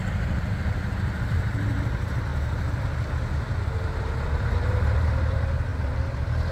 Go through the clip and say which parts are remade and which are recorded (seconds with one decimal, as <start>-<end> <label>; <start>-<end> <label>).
0.0-2.3 remade; 2.3-4.5 recorded; 4.5-5.7 remade; 5.7-6.5 recorded